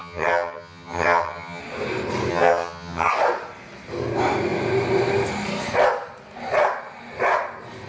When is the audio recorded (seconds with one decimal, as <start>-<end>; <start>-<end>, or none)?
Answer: 1.6-2.3; 3.1-7.9